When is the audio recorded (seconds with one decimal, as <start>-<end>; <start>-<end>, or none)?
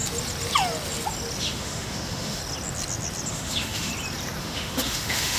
0.0-1.4; 2.4-3.3; 3.9-4.4